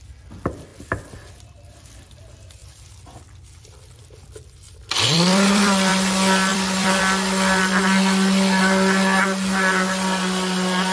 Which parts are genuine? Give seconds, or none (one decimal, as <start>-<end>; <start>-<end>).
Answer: 0.0-2.6; 5.9-6.5; 7.0-10.9